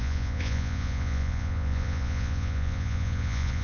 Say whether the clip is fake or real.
fake